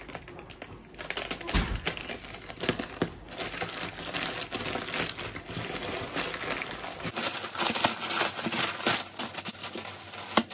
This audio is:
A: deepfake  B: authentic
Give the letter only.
B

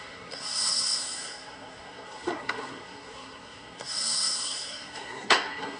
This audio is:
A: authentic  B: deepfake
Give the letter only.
B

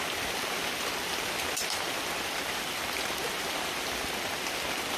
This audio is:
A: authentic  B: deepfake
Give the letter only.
A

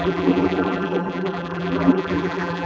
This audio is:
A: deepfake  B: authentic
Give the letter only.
A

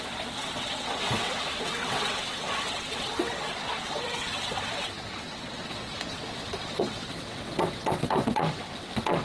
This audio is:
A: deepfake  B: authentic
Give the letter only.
A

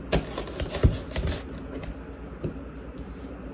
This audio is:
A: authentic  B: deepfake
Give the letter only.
A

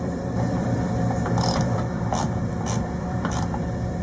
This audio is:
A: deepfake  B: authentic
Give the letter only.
A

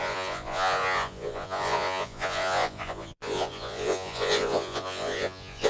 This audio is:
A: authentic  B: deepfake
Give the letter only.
B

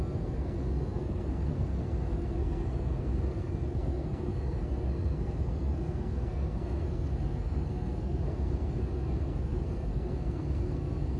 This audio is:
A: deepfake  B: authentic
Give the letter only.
A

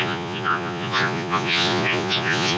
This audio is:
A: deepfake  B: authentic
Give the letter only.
A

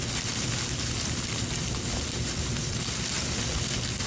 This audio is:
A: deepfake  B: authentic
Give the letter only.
B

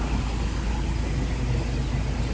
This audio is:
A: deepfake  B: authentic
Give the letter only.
B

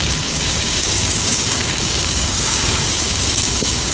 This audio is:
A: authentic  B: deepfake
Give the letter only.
B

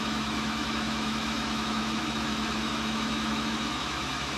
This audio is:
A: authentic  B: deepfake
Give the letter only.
B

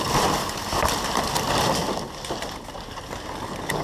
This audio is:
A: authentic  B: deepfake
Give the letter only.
A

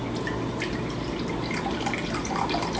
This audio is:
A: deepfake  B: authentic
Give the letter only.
B